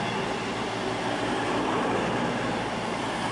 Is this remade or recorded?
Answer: recorded